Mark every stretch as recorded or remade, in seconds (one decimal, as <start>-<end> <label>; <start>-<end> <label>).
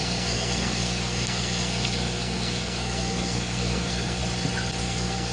0.0-4.2 remade; 4.2-4.8 recorded; 4.8-5.3 remade